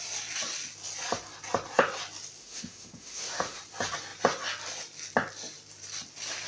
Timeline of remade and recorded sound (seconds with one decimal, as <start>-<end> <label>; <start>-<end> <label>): 0.0-2.4 recorded; 2.4-3.6 remade; 3.6-6.5 recorded